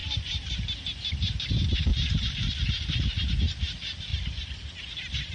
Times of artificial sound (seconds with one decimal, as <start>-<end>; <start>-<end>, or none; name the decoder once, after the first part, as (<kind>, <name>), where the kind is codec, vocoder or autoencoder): 4.1-4.7 (vocoder, BigVGAN v2)